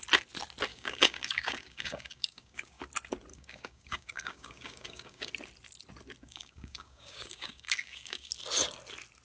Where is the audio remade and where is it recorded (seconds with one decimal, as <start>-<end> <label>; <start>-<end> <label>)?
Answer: 0.0-0.7 recorded; 0.7-2.8 remade; 2.8-3.3 recorded; 3.3-5.3 remade; 5.3-6.2 recorded; 6.2-8.3 remade; 8.3-9.2 recorded